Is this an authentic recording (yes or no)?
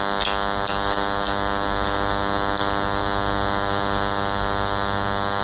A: yes